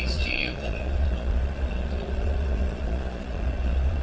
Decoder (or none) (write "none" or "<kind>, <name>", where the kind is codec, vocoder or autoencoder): vocoder, Vocos